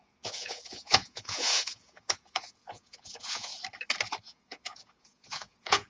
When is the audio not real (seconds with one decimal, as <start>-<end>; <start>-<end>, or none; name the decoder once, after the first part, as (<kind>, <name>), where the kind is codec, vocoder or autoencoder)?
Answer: 0.0-3.5 (vocoder, Vocos); 4.2-5.9